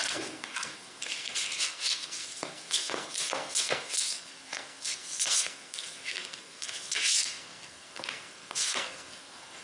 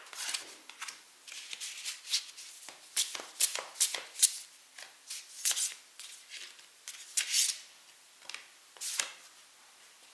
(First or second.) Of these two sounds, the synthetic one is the first